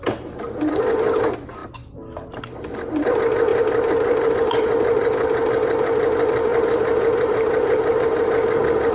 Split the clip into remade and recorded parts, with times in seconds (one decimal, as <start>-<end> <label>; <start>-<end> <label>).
0.0-1.6 recorded; 1.6-2.4 remade; 2.4-3.5 recorded; 3.5-4.3 remade; 4.3-6.5 recorded; 6.5-8.2 remade; 8.2-8.9 recorded